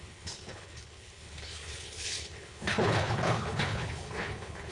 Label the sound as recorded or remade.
remade